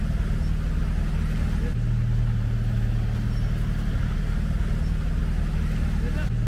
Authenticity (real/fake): real